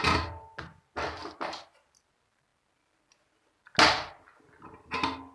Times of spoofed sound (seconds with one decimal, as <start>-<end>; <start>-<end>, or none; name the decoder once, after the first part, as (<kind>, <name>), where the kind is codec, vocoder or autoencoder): none